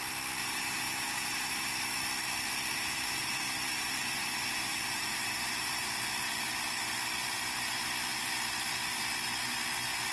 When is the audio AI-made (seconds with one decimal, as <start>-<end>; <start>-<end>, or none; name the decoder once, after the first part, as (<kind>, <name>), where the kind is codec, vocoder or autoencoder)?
0.4-1.7 (vocoder, BigVGAN v2); 2.7-5.9